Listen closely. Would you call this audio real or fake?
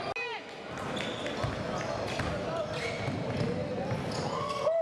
real